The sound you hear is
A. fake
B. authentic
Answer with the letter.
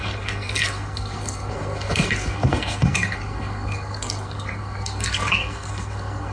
A